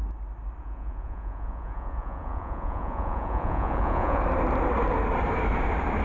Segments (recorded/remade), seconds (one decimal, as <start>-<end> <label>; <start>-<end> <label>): 0.0-0.6 recorded; 0.6-4.2 remade; 4.2-6.0 recorded